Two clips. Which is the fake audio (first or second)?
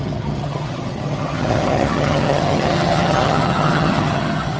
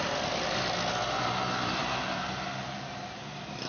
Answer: first